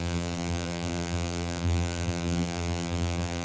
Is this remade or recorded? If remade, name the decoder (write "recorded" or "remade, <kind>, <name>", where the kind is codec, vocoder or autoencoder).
remade, vocoder, BigVGAN v2